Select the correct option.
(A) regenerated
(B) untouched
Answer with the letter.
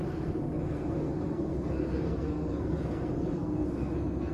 A